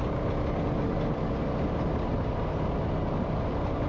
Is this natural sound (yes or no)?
yes